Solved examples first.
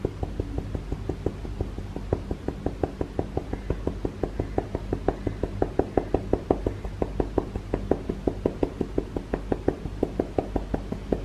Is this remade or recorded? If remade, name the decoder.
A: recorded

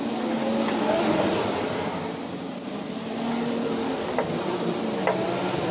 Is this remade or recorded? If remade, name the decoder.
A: recorded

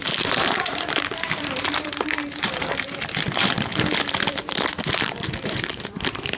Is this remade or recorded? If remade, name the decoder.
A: remade, vocoder, BigVGAN v2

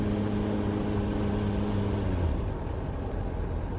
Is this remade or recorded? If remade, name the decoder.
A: recorded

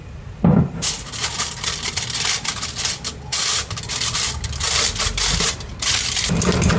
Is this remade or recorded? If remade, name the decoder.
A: remade, vocoder, BigVGAN v2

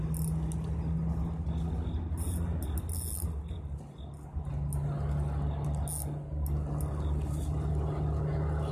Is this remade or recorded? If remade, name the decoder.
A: recorded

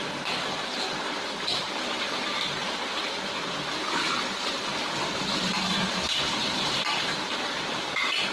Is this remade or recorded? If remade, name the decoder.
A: remade, vocoder, BigVGAN v2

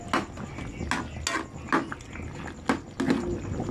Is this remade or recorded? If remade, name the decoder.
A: recorded